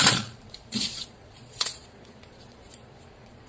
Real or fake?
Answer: fake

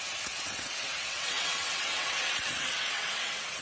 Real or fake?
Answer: fake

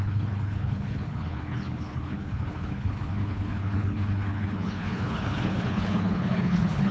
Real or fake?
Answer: fake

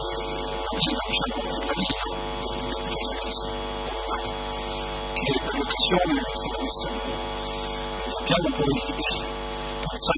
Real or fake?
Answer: real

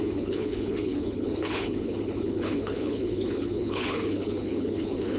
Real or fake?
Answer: fake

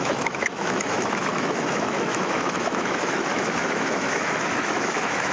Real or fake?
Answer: fake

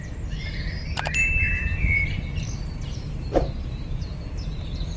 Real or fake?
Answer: fake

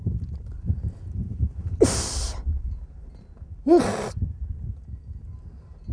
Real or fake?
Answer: real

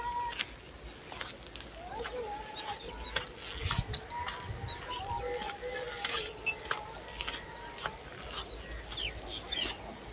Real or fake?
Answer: real